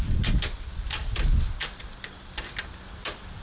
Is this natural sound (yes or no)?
yes